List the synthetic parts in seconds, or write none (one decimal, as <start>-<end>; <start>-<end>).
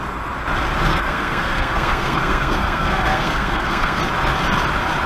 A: 0.9-4.0